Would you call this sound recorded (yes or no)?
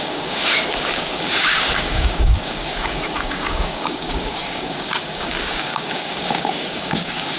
no